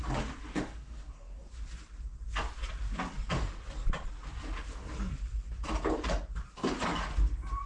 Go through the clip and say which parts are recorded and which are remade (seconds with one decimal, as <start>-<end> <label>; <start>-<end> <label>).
0.0-0.5 recorded; 0.5-1.5 remade; 1.5-7.7 recorded